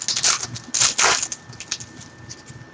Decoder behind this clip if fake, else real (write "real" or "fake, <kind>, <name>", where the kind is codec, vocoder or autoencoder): real